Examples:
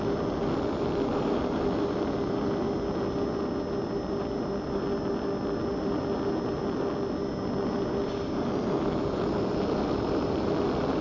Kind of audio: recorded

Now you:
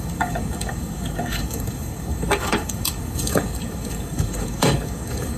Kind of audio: remade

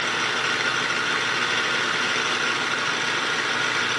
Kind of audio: recorded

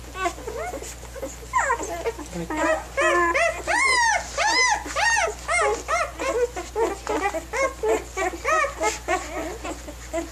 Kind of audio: recorded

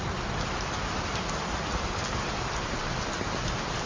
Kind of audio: recorded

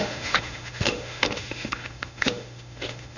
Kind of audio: remade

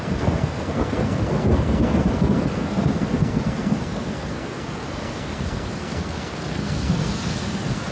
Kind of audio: remade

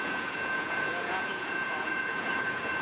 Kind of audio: remade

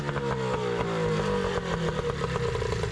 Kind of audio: recorded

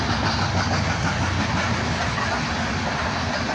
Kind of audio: recorded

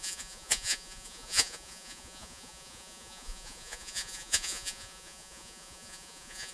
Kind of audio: remade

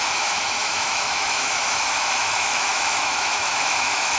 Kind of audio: remade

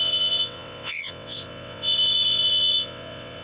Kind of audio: remade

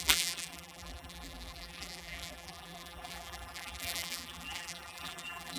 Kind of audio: remade